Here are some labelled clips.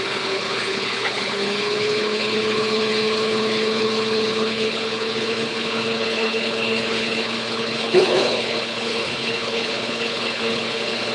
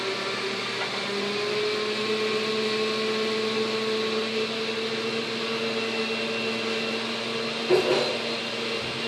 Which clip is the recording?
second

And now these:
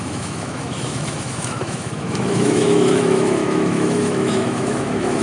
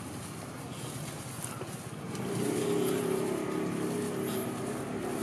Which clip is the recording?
second